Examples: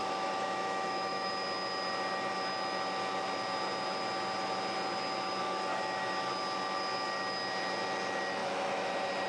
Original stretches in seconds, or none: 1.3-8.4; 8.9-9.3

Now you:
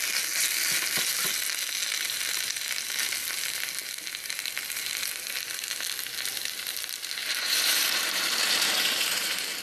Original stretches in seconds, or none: 0.0-7.2

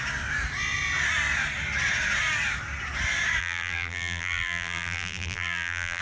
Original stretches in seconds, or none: 0.0-3.4

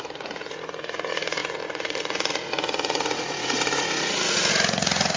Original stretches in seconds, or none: none

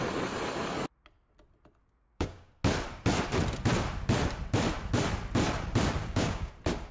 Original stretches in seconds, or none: 0.0-1.8; 2.5-6.0; 6.5-6.9